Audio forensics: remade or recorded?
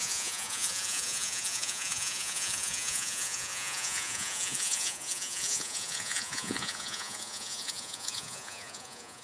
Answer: remade